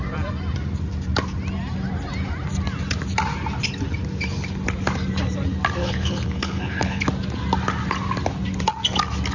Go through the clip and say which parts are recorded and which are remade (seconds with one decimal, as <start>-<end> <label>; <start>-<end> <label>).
0.0-5.8 recorded; 5.8-7.0 remade; 7.0-9.3 recorded